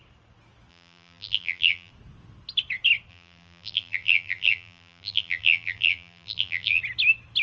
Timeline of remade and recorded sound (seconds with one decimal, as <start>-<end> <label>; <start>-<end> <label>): 0.0-0.7 recorded; 0.7-1.9 remade; 1.9-3.1 recorded; 3.1-6.8 remade; 6.8-7.4 recorded